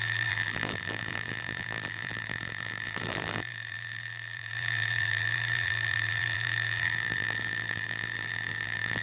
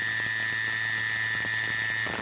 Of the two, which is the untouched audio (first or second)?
second